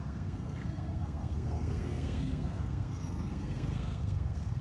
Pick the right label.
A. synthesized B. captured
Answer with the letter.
A